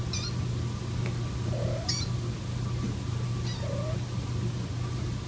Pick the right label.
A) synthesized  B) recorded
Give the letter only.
B